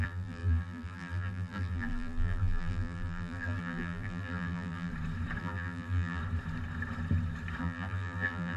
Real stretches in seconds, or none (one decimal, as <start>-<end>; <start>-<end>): 4.9-5.4; 6.2-7.6